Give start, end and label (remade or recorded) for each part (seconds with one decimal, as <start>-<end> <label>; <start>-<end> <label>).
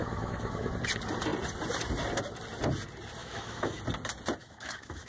0.0-0.7 remade; 0.7-3.2 recorded; 3.2-3.8 remade; 3.8-4.4 recorded; 4.4-5.1 remade